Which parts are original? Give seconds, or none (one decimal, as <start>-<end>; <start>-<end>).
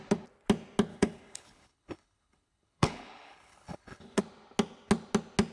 0.0-0.9; 4.2-5.5